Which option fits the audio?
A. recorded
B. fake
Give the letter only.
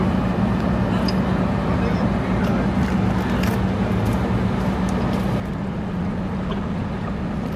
A